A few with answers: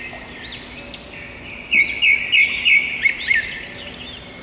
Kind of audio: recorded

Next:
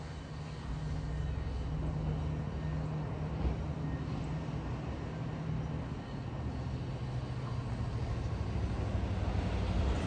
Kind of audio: recorded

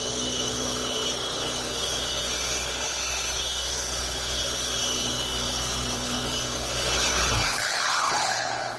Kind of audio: remade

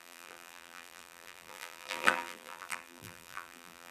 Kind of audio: remade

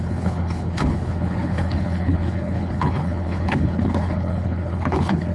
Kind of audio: remade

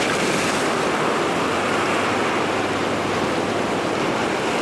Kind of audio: recorded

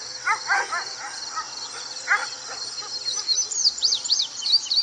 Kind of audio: recorded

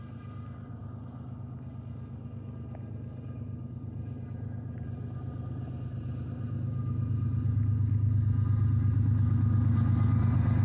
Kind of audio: recorded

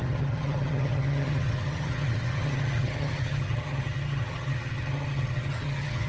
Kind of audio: remade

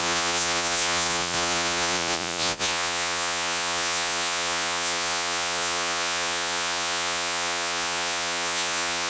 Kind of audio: remade